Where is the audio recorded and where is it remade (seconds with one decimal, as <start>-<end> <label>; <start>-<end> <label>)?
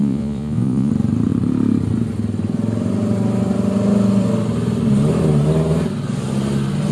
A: 0.0-0.9 remade; 0.9-6.9 recorded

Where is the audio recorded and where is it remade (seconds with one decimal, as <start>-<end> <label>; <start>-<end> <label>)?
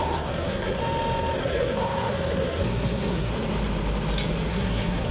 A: 0.0-0.8 remade; 0.8-1.4 recorded; 1.4-3.3 remade; 3.3-4.5 recorded; 4.5-5.1 remade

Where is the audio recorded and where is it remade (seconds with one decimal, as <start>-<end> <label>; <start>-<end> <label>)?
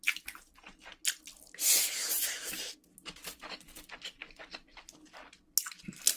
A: 0.0-6.2 recorded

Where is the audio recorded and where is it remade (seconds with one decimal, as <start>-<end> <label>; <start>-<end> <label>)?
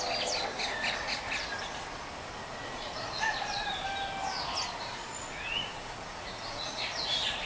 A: 0.0-0.5 recorded; 0.5-1.2 remade; 1.2-2.4 recorded; 2.4-3.7 remade; 3.7-4.9 recorded; 4.9-6.8 remade; 6.8-7.5 recorded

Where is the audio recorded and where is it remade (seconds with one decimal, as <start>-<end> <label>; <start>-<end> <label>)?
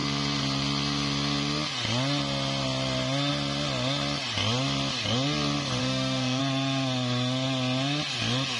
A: 0.0-5.8 recorded; 5.8-6.4 remade; 6.4-8.6 recorded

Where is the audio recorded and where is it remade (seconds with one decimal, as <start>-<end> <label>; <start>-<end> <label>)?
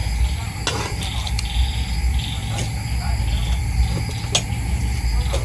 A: 0.0-5.4 recorded